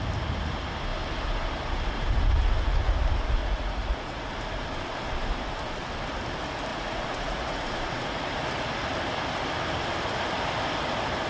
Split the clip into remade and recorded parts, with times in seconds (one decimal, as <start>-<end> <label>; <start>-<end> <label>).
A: 0.0-3.4 recorded; 3.4-4.3 remade; 4.3-6.7 recorded; 6.7-8.3 remade; 8.3-11.3 recorded